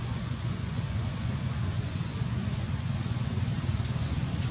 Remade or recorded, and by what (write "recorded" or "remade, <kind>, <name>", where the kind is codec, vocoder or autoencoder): remade, vocoder, Vocos